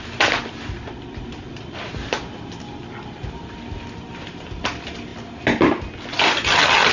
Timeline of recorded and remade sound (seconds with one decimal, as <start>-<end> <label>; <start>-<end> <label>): 0.0-6.9 recorded